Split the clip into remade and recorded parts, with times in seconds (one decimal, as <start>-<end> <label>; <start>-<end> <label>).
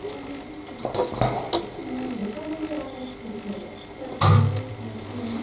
0.0-5.4 recorded